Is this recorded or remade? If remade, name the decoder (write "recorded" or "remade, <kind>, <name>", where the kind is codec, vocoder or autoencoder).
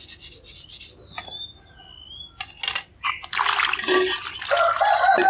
recorded